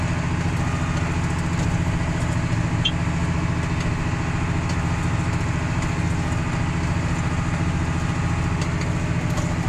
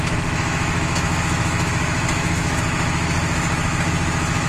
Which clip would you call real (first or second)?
first